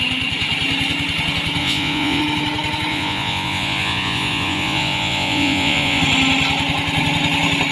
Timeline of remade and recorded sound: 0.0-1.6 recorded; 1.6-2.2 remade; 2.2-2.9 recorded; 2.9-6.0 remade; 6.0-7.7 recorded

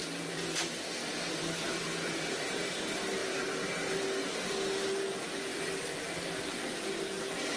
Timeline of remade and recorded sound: 0.0-2.8 remade; 2.8-3.2 recorded; 3.2-4.0 remade; 4.0-5.5 recorded; 5.5-6.9 remade; 6.9-7.6 recorded

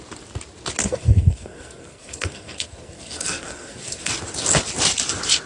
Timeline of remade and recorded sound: 0.0-0.8 recorded; 0.8-4.1 remade; 4.1-5.5 recorded

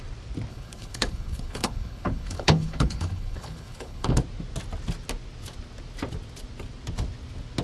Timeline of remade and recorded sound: 0.0-0.5 recorded; 0.5-4.2 remade; 4.2-7.6 recorded

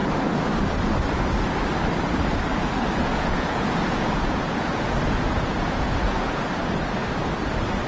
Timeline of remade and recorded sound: 0.0-3.0 recorded; 3.0-6.4 remade; 6.4-7.9 recorded

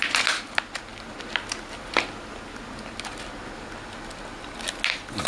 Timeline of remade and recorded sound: 0.0-5.3 recorded

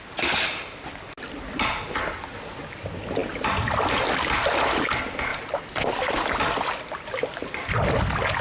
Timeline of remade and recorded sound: 0.0-5.3 recorded; 5.3-5.9 remade; 5.9-8.4 recorded

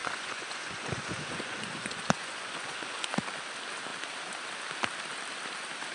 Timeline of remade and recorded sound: 0.0-3.1 remade; 3.1-5.9 recorded